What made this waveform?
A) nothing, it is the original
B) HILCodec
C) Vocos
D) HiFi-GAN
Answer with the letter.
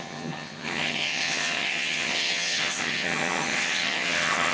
D